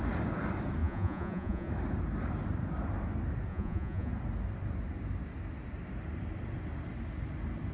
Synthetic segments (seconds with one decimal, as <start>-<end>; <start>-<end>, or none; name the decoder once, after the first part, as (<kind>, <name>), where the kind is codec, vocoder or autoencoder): 0.8-1.7 (vocoder, Vocos); 3.5-4.1